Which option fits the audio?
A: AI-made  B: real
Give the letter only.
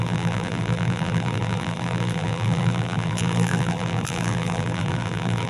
A